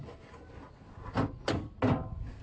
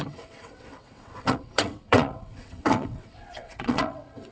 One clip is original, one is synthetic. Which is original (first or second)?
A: first